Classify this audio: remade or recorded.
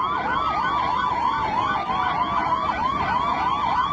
recorded